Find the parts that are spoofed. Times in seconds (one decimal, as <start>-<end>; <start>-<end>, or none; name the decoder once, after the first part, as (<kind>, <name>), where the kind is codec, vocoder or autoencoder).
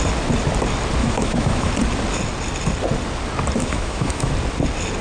1.0-1.7 (autoencoder, DAC-VAE); 3.6-4.3